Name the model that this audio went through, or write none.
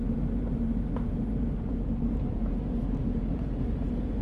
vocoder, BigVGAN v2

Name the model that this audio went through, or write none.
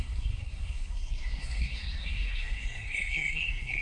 codec, SNAC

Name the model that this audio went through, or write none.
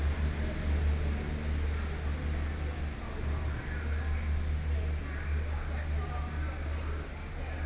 none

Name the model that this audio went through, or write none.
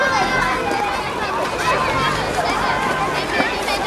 none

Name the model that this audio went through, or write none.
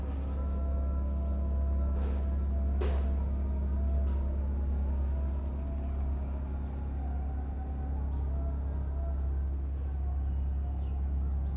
none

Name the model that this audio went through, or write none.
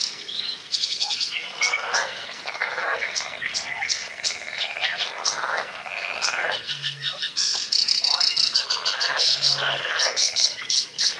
codec, SNAC